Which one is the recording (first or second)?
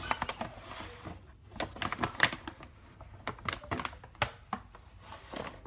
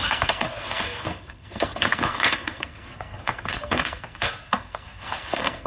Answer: first